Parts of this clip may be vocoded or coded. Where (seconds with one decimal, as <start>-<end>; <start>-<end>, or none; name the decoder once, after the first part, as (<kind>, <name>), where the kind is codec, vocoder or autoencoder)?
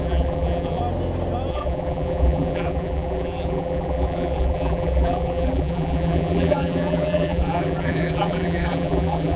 0.0-0.8 (vocoder, BigVGAN v2); 1.5-9.4